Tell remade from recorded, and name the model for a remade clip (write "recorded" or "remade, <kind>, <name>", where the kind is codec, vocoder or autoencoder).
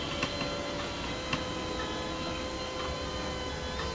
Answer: recorded